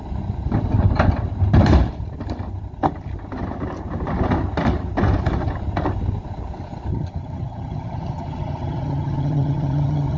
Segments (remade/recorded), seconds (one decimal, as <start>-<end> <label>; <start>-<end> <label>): 0.0-6.9 recorded; 6.9-10.2 remade